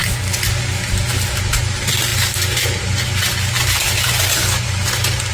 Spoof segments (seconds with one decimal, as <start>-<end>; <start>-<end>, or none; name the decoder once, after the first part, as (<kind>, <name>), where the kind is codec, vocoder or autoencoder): none